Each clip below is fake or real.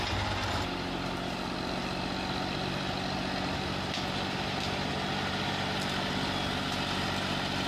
real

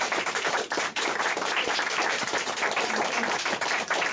fake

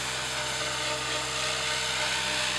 real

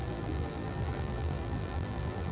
fake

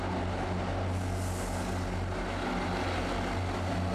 real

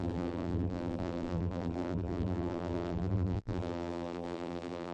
fake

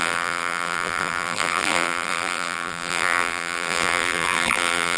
fake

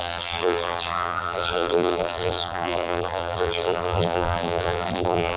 fake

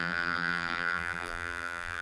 fake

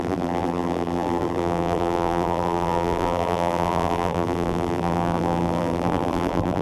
fake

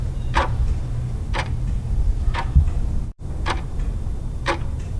fake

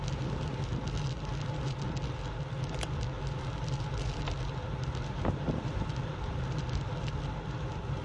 real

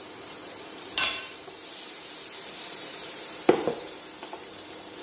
fake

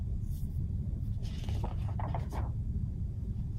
real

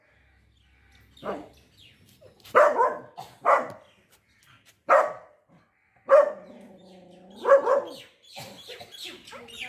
real